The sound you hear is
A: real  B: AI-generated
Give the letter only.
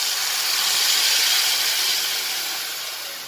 A